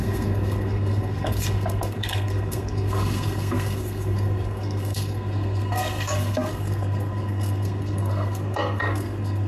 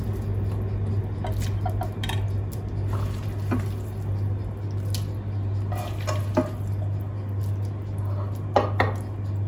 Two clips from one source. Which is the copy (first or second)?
first